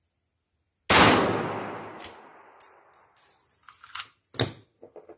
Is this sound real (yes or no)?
yes